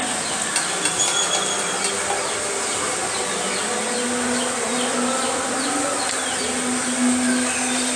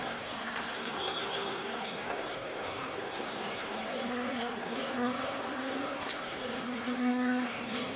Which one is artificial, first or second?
second